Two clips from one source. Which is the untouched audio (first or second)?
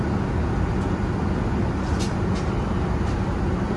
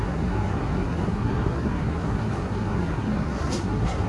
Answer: first